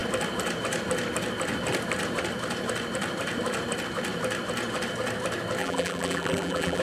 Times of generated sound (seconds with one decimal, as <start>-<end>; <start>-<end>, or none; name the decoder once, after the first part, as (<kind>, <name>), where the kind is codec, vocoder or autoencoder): 5.6-6.8 (vocoder, BigVGAN v2)